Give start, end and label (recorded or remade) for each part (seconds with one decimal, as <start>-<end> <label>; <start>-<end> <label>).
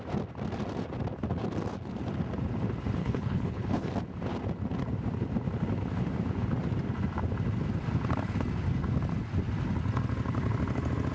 0.0-3.0 recorded; 3.0-3.9 remade; 3.9-11.1 recorded